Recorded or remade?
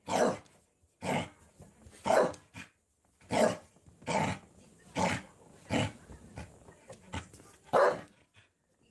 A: recorded